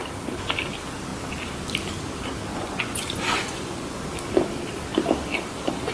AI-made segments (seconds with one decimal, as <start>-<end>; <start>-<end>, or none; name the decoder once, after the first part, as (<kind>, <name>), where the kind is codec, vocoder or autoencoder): 2.5-4.0 (vocoder, Vocos)

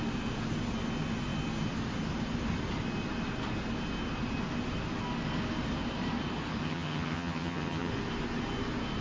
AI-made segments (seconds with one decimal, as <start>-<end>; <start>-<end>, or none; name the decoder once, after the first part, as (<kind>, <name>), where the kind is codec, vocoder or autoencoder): 6.6-7.9 (vocoder, HiFi-GAN)

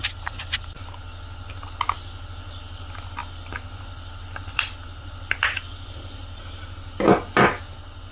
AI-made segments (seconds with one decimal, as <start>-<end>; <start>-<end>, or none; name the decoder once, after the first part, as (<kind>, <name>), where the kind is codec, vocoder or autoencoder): 3.2-6.4 (vocoder, BigVGAN v2)

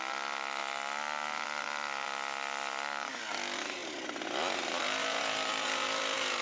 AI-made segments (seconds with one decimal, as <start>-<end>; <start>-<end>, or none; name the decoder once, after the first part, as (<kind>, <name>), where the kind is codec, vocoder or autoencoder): none

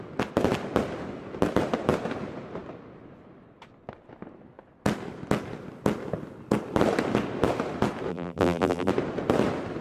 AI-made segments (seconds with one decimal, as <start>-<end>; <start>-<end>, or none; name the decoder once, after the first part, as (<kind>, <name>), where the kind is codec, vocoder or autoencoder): 8.1-8.9 (vocoder, BigVGAN v2)

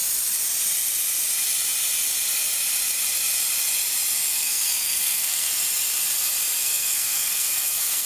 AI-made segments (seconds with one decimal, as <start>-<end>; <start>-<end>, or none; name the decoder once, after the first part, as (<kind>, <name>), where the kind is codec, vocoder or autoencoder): 4.3-5.5 (codec, SNAC); 6.6-8.1

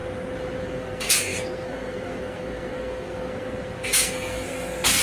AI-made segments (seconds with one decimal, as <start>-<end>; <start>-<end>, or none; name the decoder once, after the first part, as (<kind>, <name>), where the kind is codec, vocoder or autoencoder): 0.6-5.0 (codec, SNAC)

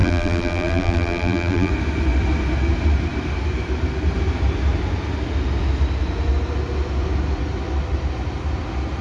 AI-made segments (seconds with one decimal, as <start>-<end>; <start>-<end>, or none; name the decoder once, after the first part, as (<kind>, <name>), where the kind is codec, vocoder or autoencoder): 0.0-1.7 (vocoder, BigVGAN v2)